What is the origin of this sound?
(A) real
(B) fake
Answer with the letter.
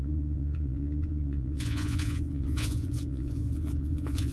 B